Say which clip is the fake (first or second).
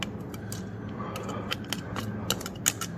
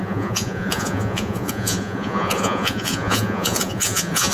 second